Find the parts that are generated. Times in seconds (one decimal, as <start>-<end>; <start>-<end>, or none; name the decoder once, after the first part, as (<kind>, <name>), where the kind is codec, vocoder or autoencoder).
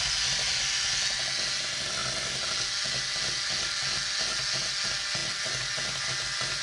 none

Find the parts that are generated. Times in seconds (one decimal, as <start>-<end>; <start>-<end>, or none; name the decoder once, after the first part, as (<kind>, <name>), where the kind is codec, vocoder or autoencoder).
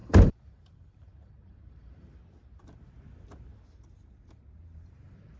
0.0-2.2 (vocoder, BigVGAN v2)